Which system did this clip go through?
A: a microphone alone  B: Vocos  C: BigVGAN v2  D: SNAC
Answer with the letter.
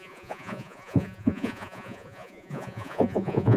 B